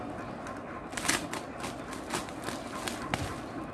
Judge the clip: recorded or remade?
recorded